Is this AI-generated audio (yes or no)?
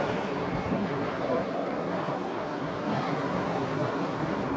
yes